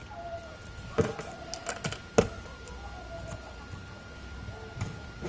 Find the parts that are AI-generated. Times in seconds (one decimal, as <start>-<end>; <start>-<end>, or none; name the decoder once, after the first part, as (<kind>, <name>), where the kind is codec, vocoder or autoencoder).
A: none